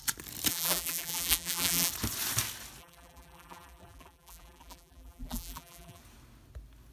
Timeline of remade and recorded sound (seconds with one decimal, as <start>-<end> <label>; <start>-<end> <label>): 0.0-0.5 recorded; 0.5-1.9 remade; 1.9-2.8 recorded; 2.8-6.0 remade; 6.0-6.9 recorded